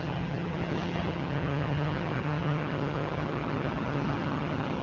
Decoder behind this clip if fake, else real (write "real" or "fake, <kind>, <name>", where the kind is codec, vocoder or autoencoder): fake, vocoder, HiFi-GAN